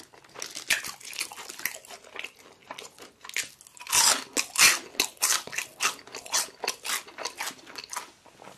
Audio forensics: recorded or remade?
recorded